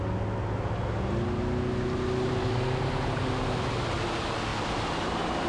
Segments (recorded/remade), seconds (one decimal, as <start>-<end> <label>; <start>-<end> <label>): 0.0-5.5 recorded